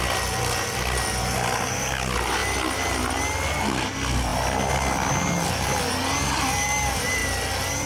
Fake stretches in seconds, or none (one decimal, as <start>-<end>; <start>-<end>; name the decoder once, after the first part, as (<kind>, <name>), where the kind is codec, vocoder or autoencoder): none